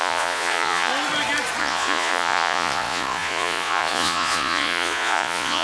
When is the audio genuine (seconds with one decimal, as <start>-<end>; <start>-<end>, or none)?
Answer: 0.9-1.6